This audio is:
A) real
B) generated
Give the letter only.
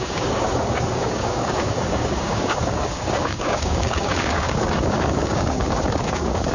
B